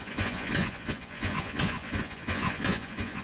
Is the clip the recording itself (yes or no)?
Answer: no